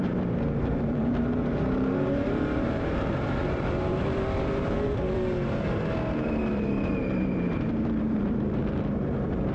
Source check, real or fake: fake